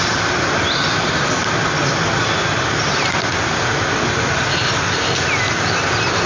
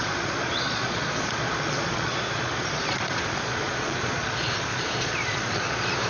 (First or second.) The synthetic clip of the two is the second